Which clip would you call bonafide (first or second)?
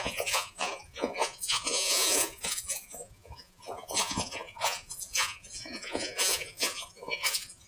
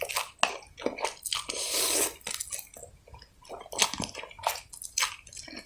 second